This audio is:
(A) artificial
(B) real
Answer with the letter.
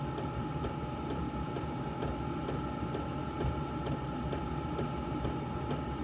B